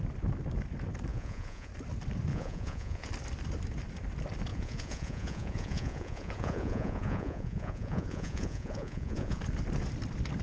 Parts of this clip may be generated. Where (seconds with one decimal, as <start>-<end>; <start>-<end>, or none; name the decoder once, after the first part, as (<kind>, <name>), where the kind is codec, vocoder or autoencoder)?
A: 1.1-1.7 (vocoder, Vocos); 2.3-3.1; 4.5-9.4